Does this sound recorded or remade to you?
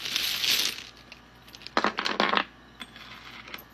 recorded